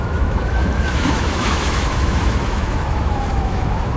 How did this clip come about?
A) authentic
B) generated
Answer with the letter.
B